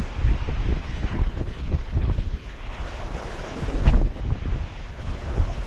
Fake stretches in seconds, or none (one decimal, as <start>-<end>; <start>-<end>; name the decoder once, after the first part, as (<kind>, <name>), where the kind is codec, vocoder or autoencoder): 0.8-4.2 (codec, HILCodec); 4.9-5.7